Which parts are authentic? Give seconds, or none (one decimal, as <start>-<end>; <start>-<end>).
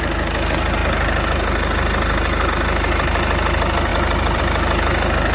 0.0-5.3